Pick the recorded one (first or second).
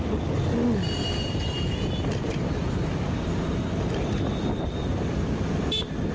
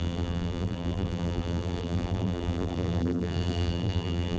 first